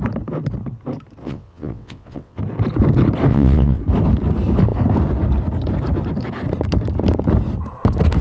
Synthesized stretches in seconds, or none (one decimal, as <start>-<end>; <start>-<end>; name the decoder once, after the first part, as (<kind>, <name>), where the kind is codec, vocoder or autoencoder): 1.2-2.4 (vocoder, WaveNeXt); 3.3-3.8